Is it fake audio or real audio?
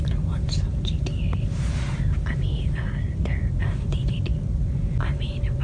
real